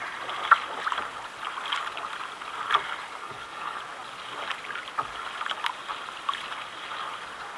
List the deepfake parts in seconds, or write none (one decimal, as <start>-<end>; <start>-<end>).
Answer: 3.2-3.8